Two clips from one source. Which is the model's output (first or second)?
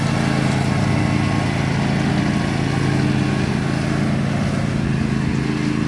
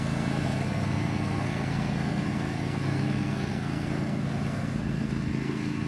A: second